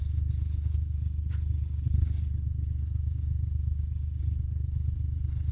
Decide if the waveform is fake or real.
fake